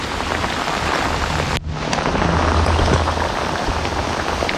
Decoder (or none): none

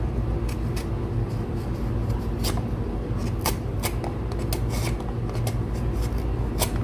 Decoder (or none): none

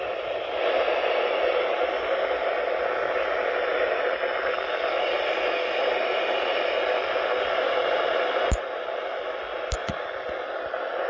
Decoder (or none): none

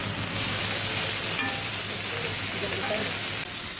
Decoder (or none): none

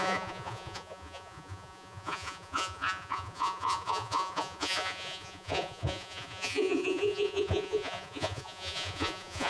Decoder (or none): vocoder, Vocos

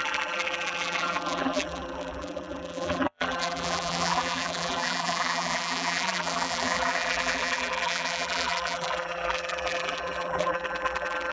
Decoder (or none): vocoder, BigVGAN v2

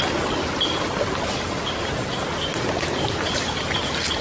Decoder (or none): none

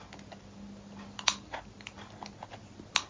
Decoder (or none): none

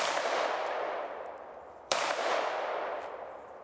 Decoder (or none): vocoder, BigVGAN v2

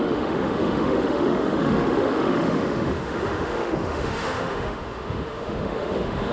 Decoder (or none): autoencoder, DAC-VAE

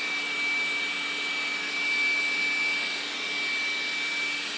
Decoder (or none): none